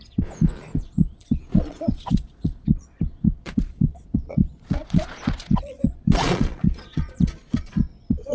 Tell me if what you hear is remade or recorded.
remade